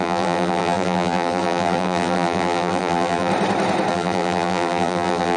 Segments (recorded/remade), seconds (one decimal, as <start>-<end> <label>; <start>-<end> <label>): 0.0-3.3 remade; 3.3-3.9 recorded; 3.9-5.4 remade